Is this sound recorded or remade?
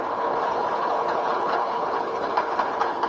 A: remade